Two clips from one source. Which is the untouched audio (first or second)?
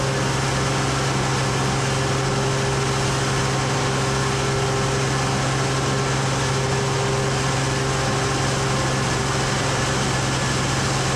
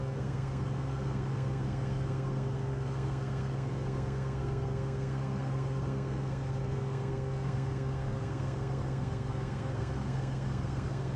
first